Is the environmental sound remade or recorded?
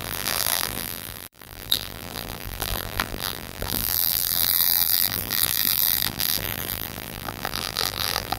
remade